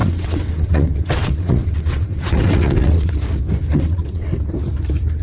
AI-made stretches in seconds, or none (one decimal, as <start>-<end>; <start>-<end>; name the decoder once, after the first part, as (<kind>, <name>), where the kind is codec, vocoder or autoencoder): 0.0-3.1 (vocoder, WaveNeXt); 3.7-4.3